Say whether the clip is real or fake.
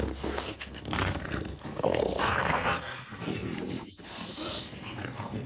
fake